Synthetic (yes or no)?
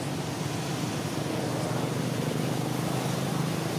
no